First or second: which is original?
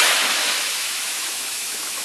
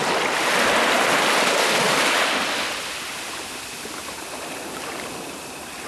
second